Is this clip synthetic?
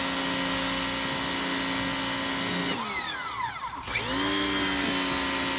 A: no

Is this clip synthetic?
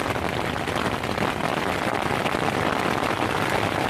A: no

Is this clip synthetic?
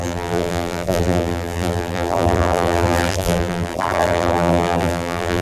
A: yes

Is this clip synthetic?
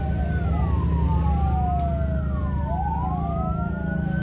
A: no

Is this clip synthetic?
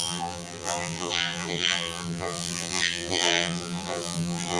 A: yes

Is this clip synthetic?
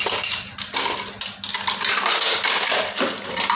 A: no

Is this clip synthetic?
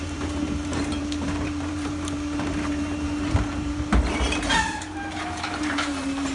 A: yes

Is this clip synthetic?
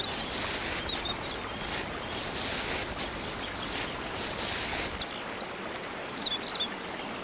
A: no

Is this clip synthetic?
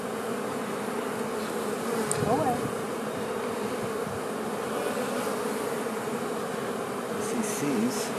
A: no